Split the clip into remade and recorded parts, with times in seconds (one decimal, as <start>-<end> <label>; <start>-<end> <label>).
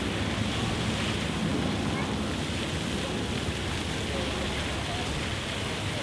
0.0-6.0 recorded